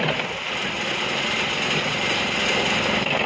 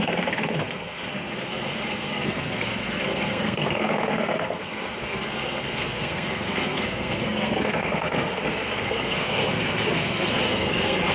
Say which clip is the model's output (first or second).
second